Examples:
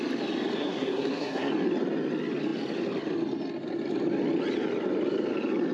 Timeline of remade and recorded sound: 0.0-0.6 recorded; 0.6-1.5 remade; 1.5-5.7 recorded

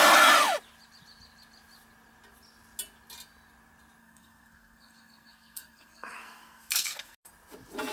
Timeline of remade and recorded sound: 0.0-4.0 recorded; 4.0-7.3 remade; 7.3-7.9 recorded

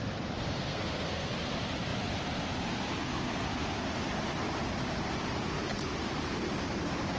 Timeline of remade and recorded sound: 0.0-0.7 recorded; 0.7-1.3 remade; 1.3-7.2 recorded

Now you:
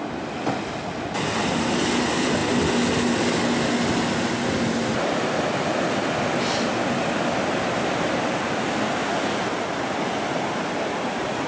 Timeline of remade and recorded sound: 0.0-11.5 recorded

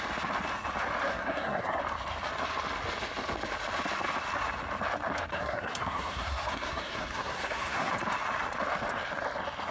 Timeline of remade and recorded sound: 0.0-1.1 recorded; 1.1-1.8 remade; 1.8-5.3 recorded; 5.3-7.9 remade; 7.9-9.7 recorded

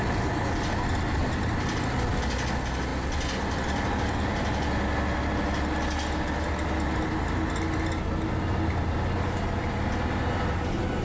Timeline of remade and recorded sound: 0.0-11.0 recorded